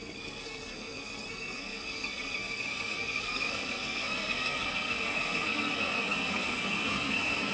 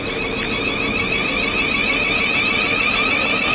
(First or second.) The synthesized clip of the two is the first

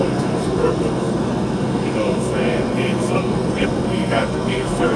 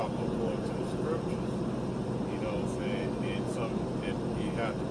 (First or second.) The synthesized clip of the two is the first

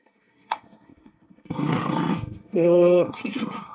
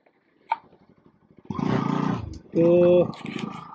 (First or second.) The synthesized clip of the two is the first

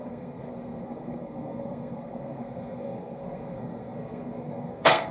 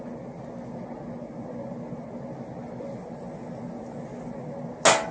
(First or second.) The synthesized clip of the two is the first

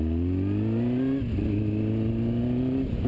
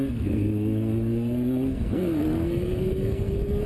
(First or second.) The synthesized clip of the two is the second